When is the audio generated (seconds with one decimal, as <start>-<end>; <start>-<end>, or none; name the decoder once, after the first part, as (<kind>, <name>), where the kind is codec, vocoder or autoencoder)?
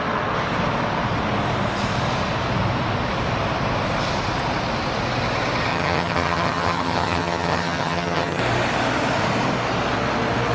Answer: 5.7-8.4 (vocoder, HiFi-GAN)